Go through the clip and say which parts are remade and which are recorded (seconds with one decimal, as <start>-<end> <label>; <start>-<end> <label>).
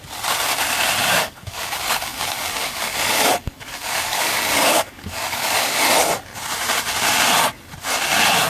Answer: 0.0-1.0 recorded; 1.0-5.9 remade; 5.9-8.5 recorded